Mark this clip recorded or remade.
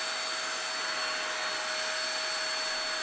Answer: recorded